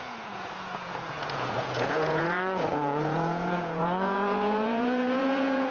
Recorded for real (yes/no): no